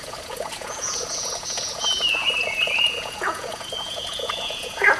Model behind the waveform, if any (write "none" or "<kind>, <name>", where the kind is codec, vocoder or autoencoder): vocoder, Vocos